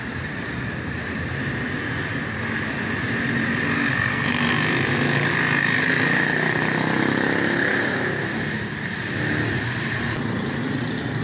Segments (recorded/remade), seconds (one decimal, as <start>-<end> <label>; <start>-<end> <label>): 0.0-3.9 recorded; 3.9-4.5 remade; 4.5-11.2 recorded